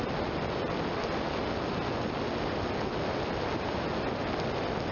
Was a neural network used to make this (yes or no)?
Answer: no